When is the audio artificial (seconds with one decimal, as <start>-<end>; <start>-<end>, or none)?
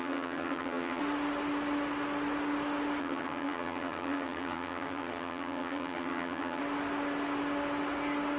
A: 0.0-1.0; 3.0-6.6